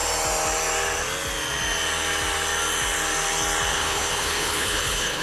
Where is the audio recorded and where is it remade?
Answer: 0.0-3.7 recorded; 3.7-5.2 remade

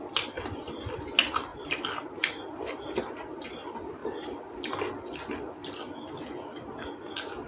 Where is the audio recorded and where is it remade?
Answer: 0.0-7.5 recorded

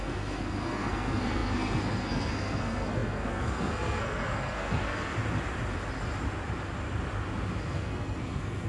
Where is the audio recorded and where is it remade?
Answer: 0.0-5.1 remade; 5.1-7.6 recorded; 7.6-8.7 remade